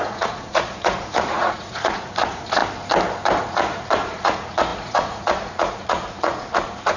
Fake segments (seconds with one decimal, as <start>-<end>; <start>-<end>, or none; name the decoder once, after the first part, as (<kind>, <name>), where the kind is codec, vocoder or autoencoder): 0.0-2.6 (vocoder, Vocos); 3.4-7.0